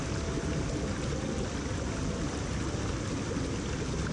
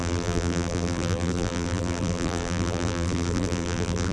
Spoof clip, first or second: second